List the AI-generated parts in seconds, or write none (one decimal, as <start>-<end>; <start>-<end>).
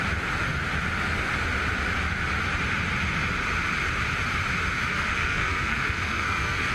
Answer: 4.9-6.7